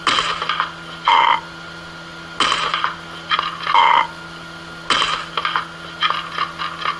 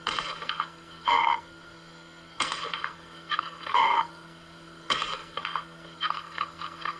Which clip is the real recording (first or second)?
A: first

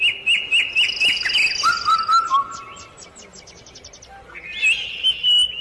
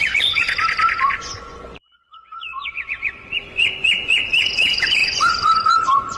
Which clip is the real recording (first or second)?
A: first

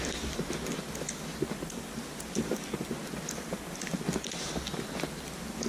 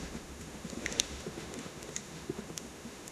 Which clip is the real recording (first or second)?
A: first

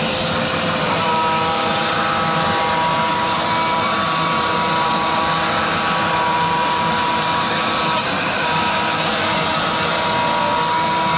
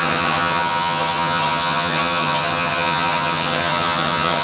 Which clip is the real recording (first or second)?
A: first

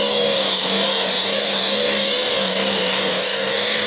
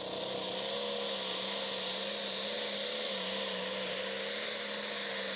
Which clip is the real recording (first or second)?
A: second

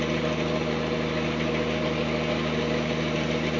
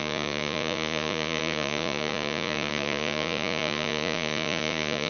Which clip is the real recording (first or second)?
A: first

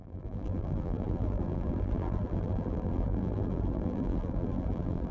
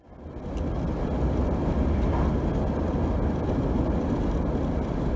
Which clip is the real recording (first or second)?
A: second